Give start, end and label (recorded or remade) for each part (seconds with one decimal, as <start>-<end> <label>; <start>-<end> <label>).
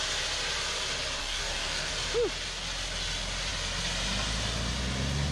0.0-1.2 recorded; 1.2-1.9 remade; 1.9-5.3 recorded